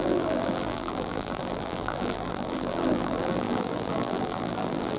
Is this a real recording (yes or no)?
no